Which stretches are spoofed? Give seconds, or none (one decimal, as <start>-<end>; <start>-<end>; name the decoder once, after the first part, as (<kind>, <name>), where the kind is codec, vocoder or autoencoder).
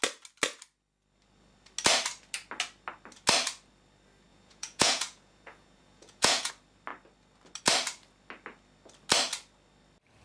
4.3-6.5 (vocoder, Vocos)